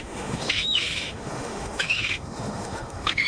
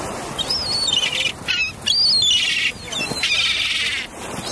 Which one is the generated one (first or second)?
first